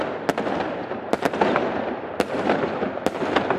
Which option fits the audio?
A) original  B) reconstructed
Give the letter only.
A